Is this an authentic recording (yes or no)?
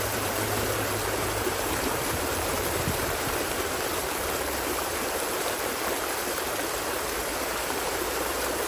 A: no